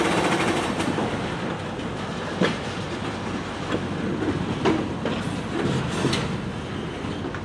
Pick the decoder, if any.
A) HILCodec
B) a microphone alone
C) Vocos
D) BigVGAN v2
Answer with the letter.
B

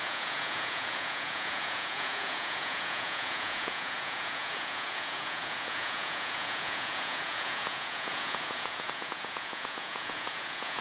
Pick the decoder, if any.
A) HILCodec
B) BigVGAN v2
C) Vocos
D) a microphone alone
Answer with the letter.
C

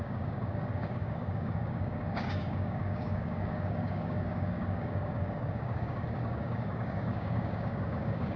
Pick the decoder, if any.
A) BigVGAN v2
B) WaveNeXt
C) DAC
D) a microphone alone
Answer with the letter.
C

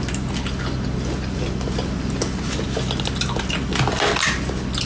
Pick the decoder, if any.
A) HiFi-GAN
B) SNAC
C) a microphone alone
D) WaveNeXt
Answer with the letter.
C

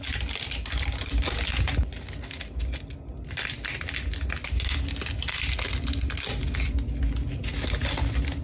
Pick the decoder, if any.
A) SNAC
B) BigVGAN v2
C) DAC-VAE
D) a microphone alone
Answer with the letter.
D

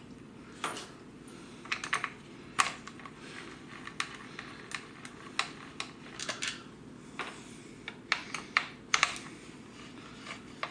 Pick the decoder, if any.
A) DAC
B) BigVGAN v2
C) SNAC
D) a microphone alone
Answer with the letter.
D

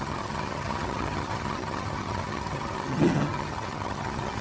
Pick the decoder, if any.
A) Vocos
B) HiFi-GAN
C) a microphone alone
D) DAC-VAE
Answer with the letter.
B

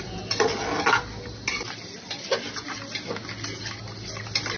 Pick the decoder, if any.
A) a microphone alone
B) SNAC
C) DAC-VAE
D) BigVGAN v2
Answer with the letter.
A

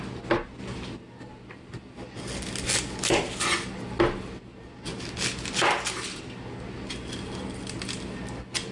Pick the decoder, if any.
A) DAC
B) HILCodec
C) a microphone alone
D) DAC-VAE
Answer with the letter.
C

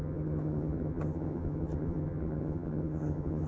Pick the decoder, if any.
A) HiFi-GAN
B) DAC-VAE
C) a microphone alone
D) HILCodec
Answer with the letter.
A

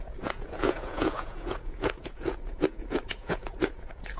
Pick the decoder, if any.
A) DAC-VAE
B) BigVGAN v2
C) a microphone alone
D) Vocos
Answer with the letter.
D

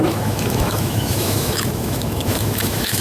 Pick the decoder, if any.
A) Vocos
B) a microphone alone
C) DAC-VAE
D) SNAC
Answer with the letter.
C